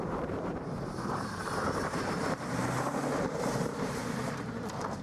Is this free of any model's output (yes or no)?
no